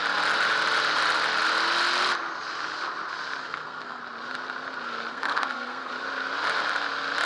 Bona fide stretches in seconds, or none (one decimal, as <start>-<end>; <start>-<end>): 0.0-3.4; 4.0-5.1; 5.9-7.2